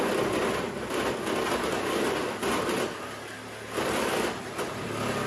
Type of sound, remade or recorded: recorded